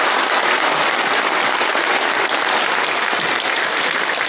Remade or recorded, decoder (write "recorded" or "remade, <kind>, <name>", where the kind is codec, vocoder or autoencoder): recorded